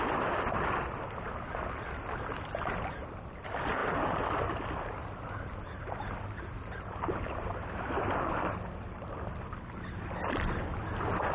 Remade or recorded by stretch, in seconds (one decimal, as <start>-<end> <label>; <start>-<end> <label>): 0.0-11.3 recorded